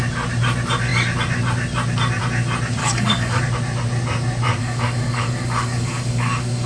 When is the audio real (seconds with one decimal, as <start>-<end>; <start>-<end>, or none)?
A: 0.0-2.8; 3.4-4.6